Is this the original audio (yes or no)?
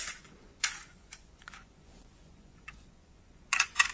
no